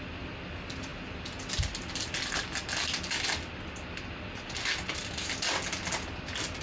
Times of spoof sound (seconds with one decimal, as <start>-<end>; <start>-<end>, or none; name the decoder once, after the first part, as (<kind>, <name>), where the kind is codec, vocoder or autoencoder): none